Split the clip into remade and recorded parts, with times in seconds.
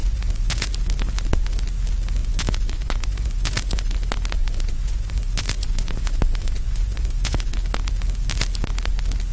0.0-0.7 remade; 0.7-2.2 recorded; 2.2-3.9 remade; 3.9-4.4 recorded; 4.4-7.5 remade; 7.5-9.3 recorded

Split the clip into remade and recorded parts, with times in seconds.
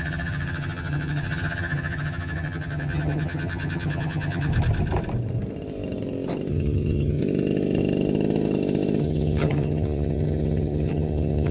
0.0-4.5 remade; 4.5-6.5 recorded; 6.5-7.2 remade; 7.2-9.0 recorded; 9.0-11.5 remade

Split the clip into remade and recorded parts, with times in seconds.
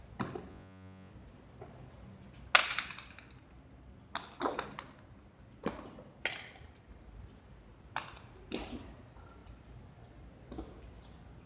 0.0-0.5 recorded; 0.5-1.1 remade; 1.1-11.5 recorded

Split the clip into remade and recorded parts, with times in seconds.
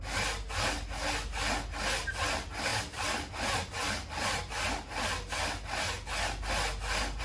0.0-7.2 recorded